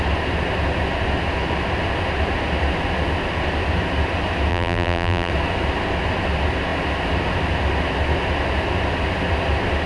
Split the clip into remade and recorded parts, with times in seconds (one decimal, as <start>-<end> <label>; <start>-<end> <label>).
0.0-4.5 recorded; 4.5-5.3 remade; 5.3-9.9 recorded